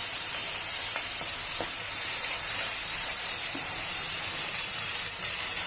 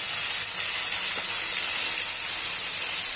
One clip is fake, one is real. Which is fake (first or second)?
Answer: first